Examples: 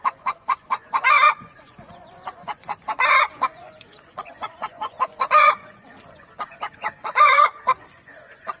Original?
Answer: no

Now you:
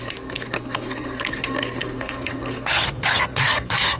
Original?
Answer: no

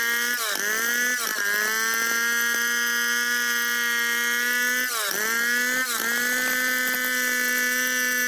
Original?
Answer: yes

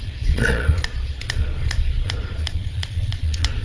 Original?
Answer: no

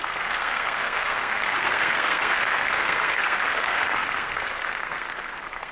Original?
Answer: no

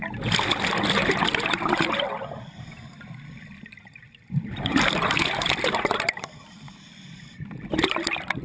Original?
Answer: no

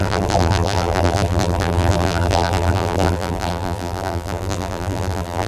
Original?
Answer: no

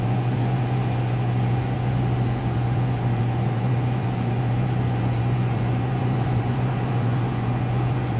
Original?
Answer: no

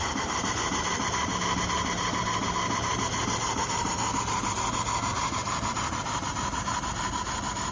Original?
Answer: yes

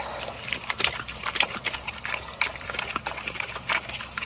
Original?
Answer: yes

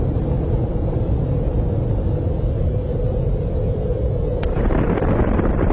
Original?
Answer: yes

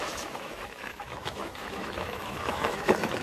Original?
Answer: no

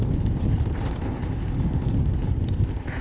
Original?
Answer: yes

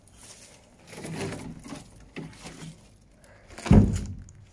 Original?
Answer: yes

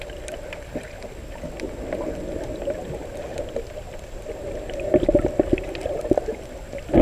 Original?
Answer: yes